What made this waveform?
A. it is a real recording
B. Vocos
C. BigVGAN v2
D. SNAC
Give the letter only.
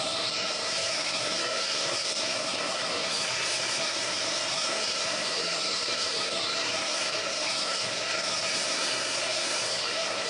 D